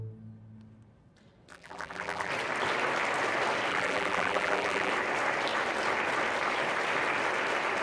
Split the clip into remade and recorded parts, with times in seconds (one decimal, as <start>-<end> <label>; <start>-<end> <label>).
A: 0.0-1.5 recorded; 1.5-2.3 remade; 2.3-3.7 recorded; 3.7-4.9 remade; 4.9-7.8 recorded